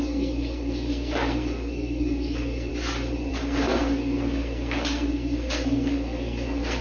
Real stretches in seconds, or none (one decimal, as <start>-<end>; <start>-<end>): 2.7-3.3

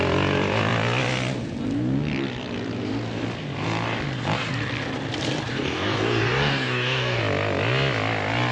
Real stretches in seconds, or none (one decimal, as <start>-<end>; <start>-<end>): 0.0-5.5; 7.2-8.5

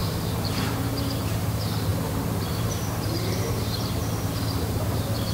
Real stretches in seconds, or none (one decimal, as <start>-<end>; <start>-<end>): 4.0-4.6

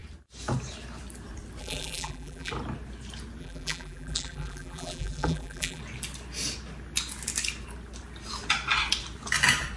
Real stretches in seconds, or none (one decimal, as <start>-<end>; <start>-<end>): 0.0-1.6; 2.5-3.4; 5.8-9.8

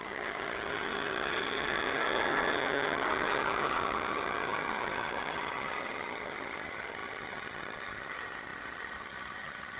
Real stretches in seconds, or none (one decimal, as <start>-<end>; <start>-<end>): none